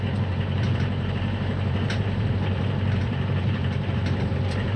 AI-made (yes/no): yes